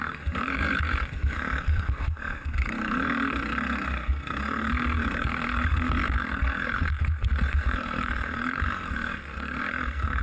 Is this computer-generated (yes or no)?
yes